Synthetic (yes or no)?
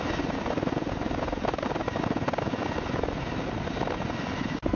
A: no